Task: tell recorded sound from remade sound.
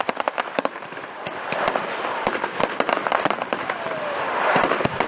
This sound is remade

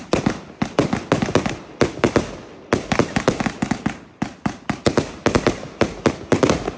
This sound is recorded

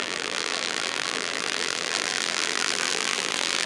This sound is remade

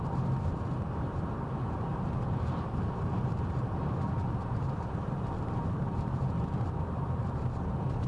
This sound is remade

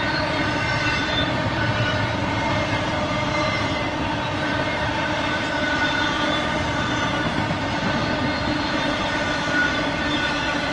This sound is remade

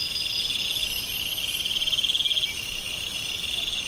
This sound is recorded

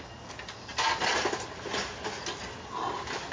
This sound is recorded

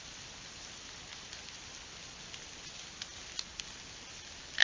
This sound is recorded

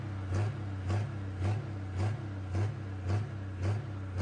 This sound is recorded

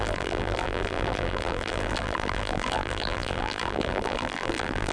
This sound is remade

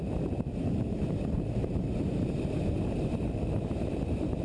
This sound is remade